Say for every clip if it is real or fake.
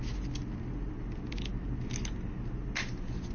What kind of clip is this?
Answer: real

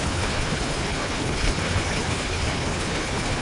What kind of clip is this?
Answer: fake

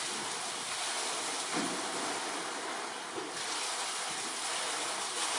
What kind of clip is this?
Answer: real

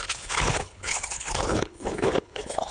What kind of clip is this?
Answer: fake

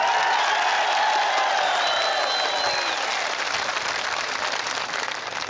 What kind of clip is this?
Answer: real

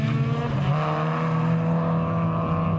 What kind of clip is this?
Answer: real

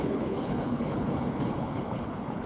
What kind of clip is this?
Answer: fake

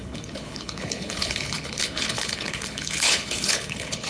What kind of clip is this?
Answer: fake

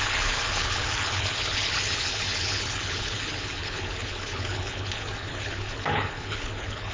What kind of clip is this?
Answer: fake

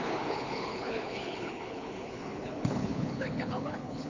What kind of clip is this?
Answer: fake